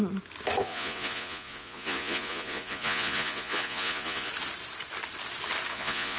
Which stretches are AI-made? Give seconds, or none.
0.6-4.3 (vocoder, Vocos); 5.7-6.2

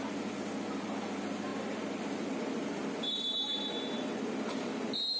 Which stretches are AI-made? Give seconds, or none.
none